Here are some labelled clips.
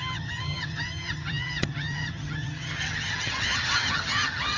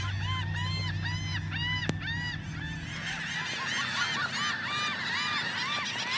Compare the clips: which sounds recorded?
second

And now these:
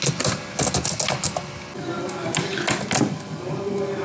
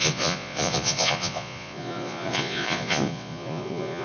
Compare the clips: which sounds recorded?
first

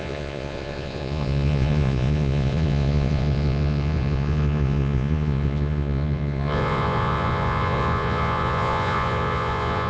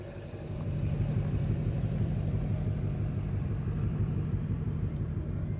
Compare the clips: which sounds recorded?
second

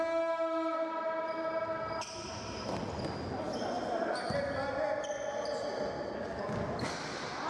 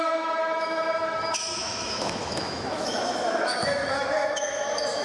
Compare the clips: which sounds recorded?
first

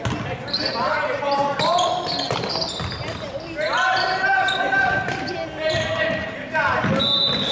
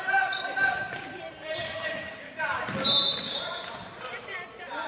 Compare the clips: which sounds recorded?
first